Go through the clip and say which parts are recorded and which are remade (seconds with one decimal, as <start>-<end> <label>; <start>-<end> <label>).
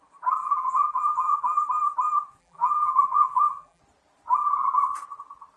0.0-0.4 recorded; 0.4-1.7 remade; 1.7-2.4 recorded; 2.4-3.8 remade; 3.8-5.6 recorded